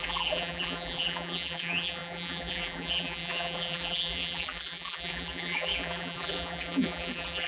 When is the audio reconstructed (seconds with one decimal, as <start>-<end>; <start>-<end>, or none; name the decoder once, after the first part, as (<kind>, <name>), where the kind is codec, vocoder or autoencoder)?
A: 0.0-7.5 (vocoder, BigVGAN v2)